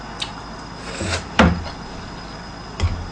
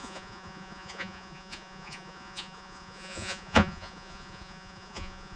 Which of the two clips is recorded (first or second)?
first